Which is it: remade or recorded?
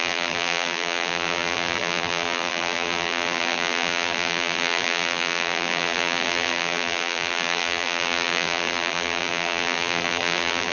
remade